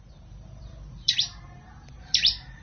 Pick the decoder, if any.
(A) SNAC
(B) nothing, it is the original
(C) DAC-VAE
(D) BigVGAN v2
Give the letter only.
D